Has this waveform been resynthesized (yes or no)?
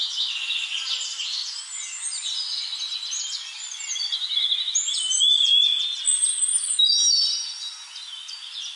no